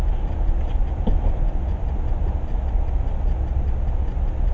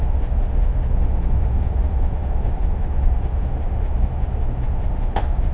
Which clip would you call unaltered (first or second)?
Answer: first